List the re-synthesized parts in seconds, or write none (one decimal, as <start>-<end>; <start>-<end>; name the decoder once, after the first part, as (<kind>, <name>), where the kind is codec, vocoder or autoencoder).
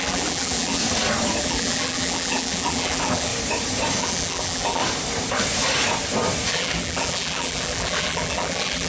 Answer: 0.0-0.8 (vocoder, BigVGAN v2); 1.4-3.3; 4.0-4.8; 6.5-8.9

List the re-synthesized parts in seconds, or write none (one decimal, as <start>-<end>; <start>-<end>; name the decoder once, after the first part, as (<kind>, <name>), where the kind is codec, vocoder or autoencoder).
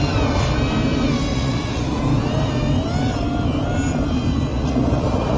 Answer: 1.3-2.0 (vocoder, Vocos); 4.5-5.4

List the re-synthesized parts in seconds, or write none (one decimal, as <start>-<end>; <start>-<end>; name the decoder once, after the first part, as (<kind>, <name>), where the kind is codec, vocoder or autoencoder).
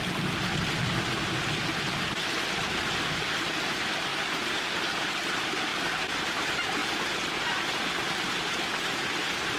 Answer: 5.7-6.2 (vocoder, BigVGAN v2); 6.8-8.4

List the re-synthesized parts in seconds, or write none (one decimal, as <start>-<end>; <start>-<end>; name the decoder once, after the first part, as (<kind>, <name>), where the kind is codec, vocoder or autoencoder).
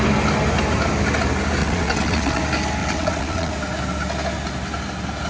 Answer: 1.6-2.4 (vocoder, WaveNeXt); 2.8-3.5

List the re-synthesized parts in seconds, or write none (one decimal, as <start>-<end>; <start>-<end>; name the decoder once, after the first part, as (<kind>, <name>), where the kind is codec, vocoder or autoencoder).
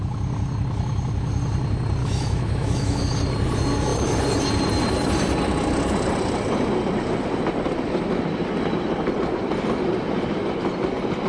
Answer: 2.0-3.0 (autoencoder, DAC-VAE)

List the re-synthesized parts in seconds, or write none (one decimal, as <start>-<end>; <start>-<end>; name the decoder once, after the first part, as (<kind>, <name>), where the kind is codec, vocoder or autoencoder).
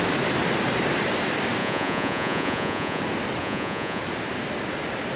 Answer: 1.6-3.0 (vocoder, Vocos); 3.4-4.0